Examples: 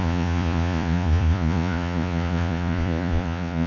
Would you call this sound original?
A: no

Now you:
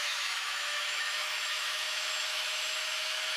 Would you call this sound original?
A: no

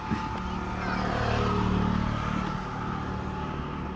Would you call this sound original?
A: yes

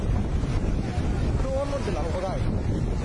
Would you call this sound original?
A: yes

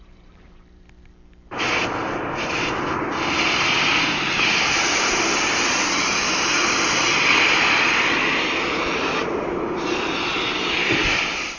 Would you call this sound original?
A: no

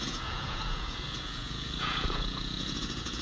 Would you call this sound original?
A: no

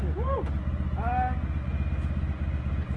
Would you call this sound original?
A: yes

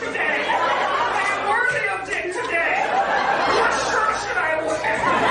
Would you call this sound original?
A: yes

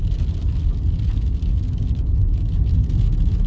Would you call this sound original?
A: yes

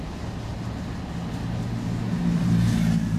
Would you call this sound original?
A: yes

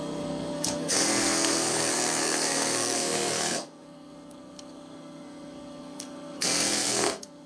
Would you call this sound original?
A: no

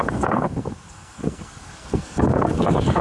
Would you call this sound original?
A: no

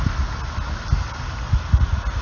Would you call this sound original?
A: yes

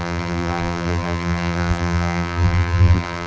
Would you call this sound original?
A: no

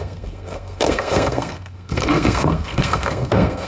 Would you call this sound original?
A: no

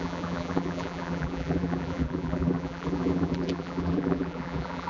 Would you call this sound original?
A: no